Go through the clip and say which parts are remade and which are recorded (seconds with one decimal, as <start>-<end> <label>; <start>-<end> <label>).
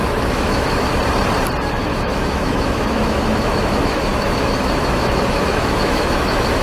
0.0-0.9 remade; 0.9-1.7 recorded; 1.7-6.6 remade